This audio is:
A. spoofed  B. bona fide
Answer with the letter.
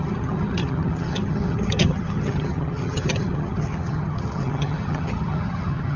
A